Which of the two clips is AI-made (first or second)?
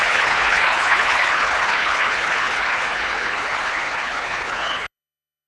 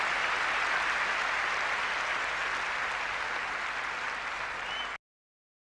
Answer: first